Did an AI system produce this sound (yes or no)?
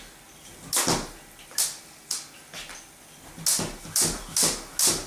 no